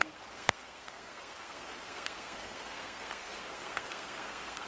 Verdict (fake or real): fake